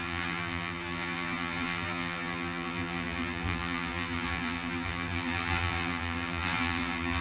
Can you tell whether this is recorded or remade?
remade